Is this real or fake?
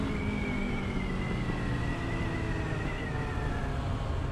real